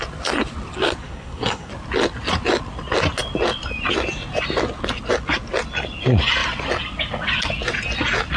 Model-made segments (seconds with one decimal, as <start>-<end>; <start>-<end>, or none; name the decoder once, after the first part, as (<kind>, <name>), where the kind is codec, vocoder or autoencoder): 1.0-1.7 (codec, SNAC)